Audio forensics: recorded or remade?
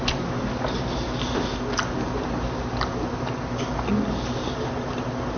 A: recorded